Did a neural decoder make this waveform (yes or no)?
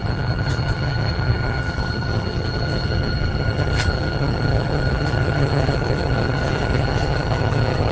yes